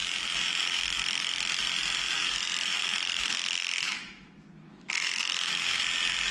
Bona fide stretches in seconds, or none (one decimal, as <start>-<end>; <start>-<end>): 0.0-0.6; 1.6-2.8; 5.8-6.3